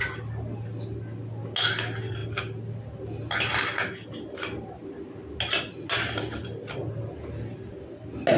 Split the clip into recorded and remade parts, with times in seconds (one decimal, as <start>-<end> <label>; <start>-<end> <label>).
0.0-8.4 recorded